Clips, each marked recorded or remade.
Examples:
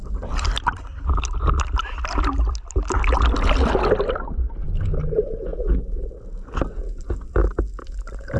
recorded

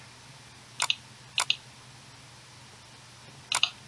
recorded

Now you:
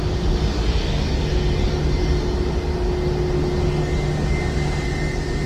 recorded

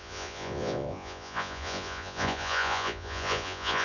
remade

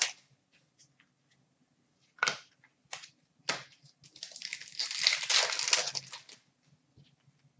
recorded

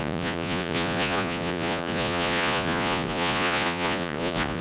remade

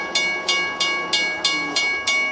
recorded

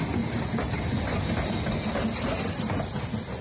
recorded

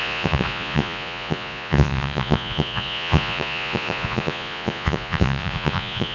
remade